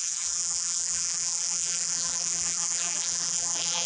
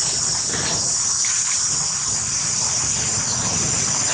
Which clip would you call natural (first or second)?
second